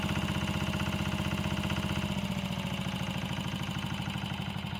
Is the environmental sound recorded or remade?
recorded